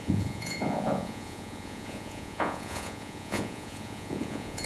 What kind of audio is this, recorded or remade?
remade